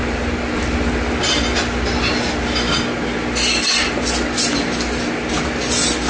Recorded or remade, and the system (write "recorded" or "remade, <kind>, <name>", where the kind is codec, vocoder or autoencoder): recorded